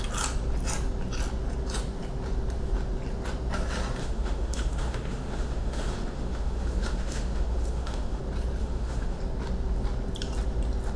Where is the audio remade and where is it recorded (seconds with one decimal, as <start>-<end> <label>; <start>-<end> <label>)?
0.0-4.0 recorded; 4.0-8.2 remade; 8.2-8.6 recorded; 8.6-9.2 remade; 9.2-11.0 recorded